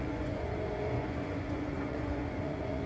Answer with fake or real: fake